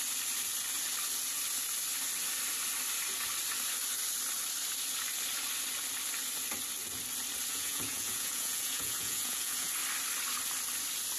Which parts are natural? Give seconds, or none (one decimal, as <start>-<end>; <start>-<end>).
0.0-7.5; 9.7-11.2